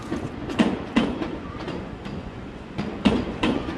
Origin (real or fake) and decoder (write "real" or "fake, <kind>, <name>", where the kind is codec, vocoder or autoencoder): fake, vocoder, Vocos